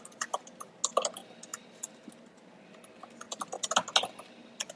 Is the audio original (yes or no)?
yes